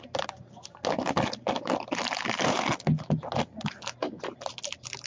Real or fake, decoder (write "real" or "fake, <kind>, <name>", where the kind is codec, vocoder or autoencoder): real